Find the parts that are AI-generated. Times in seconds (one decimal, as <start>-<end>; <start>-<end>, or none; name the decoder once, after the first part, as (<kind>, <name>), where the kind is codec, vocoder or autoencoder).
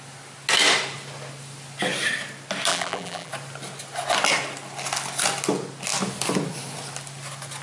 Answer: 2.7-3.3 (vocoder, BigVGAN v2)